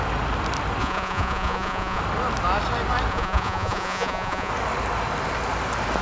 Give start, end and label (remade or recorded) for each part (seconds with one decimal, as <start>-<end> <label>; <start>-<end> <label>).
0.0-0.8 recorded; 0.8-2.0 remade; 2.0-3.1 recorded; 3.1-4.5 remade; 4.5-6.0 recorded